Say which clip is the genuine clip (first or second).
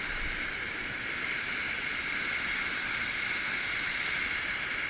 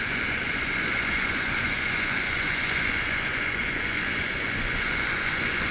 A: first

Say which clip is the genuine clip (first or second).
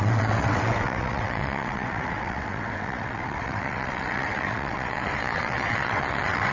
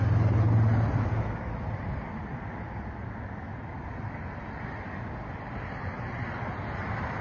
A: second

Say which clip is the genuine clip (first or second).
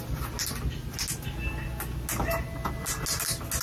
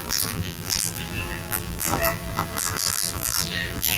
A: first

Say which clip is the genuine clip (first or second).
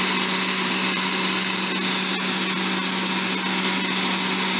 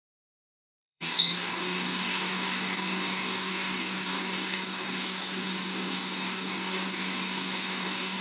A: first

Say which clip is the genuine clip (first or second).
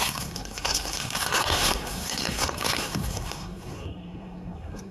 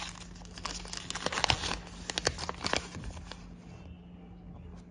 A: second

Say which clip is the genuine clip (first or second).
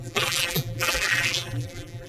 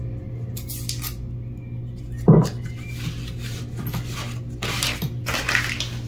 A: second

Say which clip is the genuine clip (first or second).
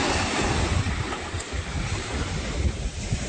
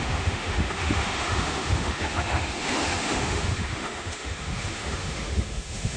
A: first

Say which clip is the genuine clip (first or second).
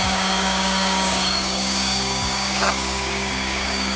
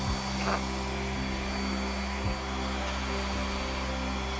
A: second